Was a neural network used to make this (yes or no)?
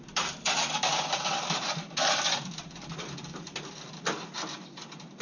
yes